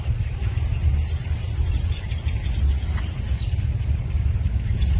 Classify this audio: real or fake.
real